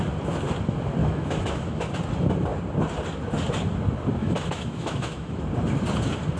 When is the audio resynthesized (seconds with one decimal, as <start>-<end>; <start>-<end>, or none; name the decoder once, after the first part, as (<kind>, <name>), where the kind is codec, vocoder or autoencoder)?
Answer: 1.0-1.9 (autoencoder, DAC-VAE); 4.2-5.4